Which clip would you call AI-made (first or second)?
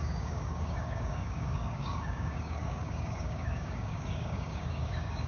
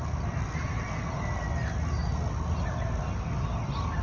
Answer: first